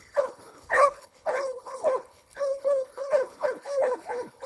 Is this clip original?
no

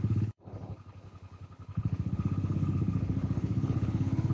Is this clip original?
no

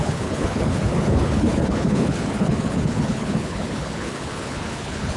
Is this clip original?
no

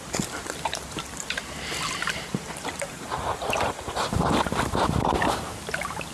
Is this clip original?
yes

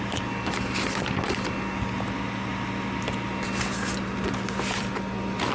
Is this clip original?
yes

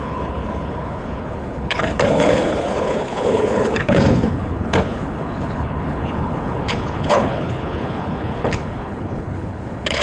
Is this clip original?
no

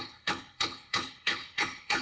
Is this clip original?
no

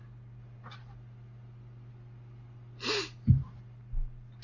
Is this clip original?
yes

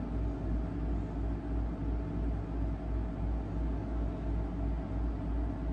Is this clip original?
yes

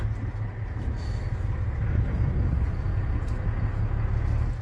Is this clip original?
yes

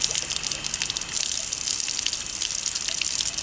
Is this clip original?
yes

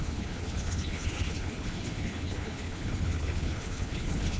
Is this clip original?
no